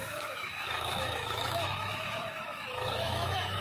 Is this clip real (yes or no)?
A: no